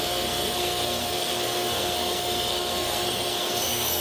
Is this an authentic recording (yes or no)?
no